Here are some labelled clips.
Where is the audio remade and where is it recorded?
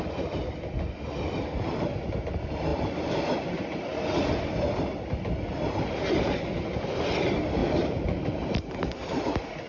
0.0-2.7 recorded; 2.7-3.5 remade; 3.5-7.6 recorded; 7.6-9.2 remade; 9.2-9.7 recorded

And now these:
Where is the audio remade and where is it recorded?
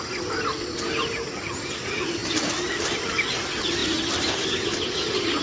0.0-2.2 recorded; 2.2-3.1 remade; 3.1-3.8 recorded; 3.8-4.4 remade; 4.4-5.4 recorded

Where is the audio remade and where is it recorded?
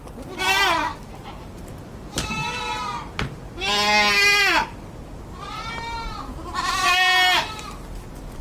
0.0-8.4 recorded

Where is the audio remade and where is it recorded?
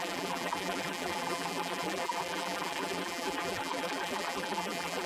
0.0-5.1 remade